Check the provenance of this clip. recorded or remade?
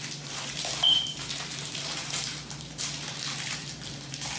remade